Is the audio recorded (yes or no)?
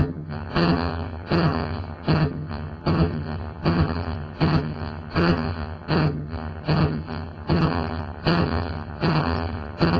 no